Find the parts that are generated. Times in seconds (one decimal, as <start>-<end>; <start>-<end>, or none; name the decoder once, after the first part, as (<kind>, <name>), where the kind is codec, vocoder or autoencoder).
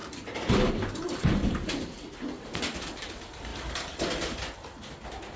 0.0-0.7 (vocoder, BigVGAN v2); 3.5-4.1